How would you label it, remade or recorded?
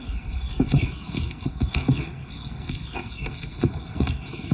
remade